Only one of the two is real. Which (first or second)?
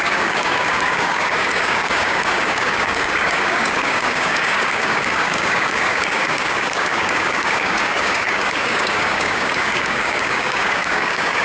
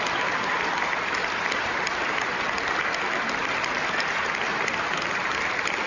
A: second